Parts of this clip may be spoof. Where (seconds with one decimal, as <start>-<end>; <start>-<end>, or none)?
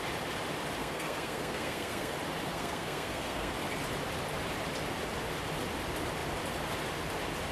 0.8-2.1; 2.5-3.5